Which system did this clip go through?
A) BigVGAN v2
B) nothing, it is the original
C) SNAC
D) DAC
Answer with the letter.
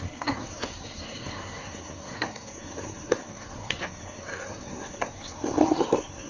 C